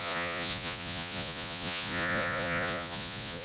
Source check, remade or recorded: remade